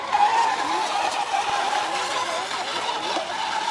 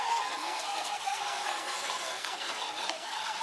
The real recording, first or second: first